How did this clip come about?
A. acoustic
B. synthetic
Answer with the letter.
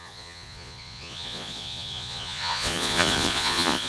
B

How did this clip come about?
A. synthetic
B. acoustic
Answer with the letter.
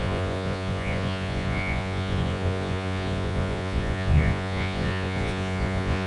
A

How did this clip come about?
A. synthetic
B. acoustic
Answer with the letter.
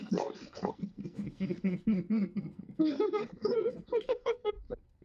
A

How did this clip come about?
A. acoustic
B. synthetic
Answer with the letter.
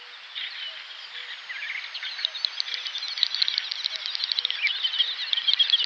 A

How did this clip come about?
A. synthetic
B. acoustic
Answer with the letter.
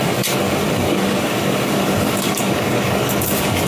A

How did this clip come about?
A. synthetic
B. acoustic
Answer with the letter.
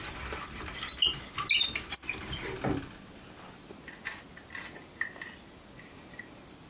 B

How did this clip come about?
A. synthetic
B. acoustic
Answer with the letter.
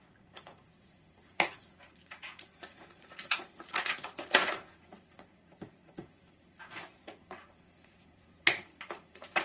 A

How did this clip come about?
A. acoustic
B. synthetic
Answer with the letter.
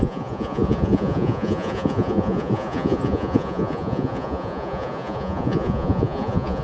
B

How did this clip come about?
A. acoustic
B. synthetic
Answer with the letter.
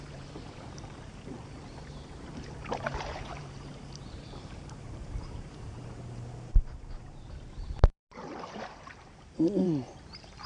B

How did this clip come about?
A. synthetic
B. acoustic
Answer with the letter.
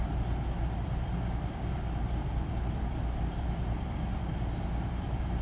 A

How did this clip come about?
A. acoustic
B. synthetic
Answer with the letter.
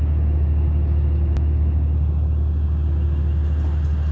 A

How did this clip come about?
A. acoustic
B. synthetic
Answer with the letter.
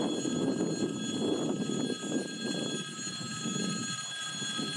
A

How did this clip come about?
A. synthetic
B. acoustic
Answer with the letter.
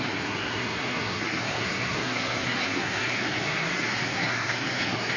A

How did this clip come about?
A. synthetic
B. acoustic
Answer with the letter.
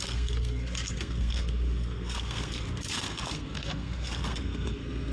A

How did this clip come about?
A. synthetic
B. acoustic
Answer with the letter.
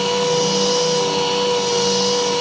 B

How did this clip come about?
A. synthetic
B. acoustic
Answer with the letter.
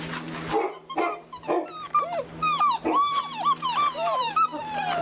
B